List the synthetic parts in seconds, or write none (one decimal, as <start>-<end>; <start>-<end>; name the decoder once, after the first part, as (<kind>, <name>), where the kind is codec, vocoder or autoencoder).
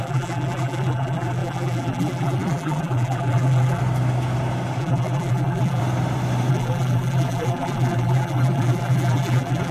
0.0-3.8 (vocoder, BigVGAN v2); 4.8-5.8; 6.5-9.7